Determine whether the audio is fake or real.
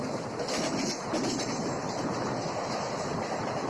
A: real